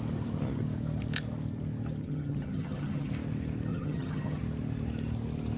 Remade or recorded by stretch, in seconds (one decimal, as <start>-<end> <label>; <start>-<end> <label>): 0.0-2.0 recorded; 2.0-3.1 remade; 3.1-3.7 recorded; 3.7-4.4 remade; 4.4-5.6 recorded